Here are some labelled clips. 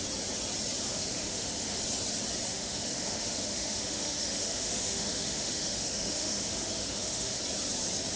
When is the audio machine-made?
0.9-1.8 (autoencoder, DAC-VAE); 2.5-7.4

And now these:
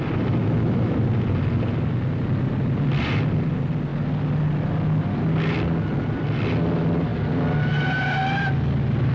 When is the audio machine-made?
0.4-1.0 (autoencoder, DAC-VAE)